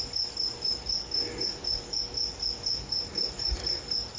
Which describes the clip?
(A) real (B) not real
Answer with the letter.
A